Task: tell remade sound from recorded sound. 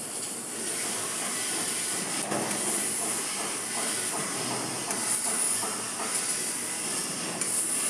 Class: recorded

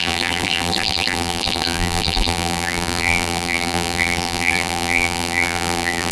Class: remade